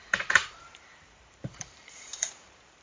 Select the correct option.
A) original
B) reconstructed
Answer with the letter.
B